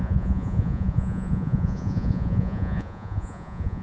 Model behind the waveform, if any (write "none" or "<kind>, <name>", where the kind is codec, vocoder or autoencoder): vocoder, Vocos